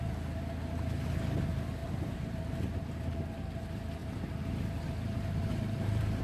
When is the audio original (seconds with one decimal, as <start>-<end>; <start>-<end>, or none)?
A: 0.0-1.8; 2.4-4.0